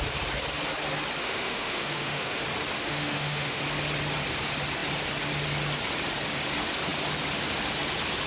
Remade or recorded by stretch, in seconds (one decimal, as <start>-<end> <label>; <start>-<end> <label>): 0.0-1.2 recorded; 1.2-2.4 remade; 2.4-2.8 recorded; 2.8-3.6 remade; 3.6-8.3 recorded